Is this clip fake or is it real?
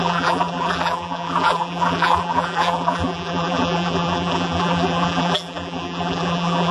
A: fake